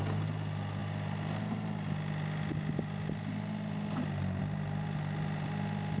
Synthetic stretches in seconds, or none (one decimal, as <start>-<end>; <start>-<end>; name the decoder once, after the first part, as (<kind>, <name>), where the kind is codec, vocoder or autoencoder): none